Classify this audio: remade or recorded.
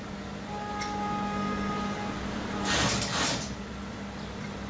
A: recorded